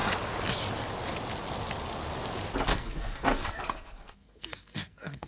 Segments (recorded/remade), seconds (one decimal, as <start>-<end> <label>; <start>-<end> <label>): 0.0-2.7 recorded; 2.7-5.3 remade